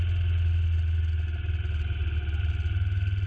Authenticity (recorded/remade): recorded